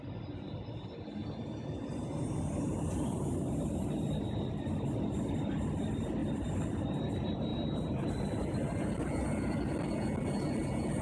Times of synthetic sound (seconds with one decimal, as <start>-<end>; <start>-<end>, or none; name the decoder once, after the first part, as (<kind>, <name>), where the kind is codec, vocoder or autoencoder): 6.2-7.1 (vocoder, BigVGAN v2); 7.5-9.9